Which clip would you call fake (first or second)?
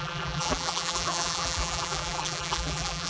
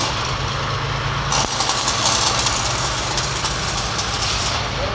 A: first